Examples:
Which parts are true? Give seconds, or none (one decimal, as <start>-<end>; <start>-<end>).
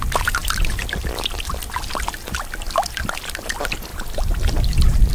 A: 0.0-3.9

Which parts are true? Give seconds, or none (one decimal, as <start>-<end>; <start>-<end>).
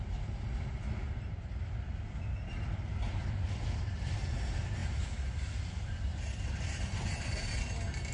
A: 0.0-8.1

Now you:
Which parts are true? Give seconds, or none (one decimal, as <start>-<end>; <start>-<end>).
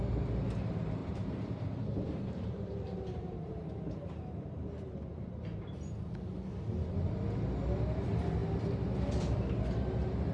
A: 0.0-1.0; 5.9-10.3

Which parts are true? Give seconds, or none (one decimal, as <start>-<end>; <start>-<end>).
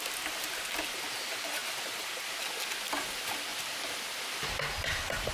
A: 0.0-5.3